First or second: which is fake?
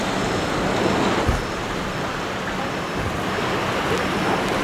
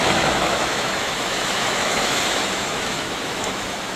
second